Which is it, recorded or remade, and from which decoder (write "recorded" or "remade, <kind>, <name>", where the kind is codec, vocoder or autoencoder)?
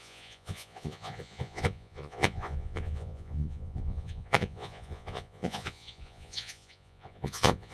remade, vocoder, Vocos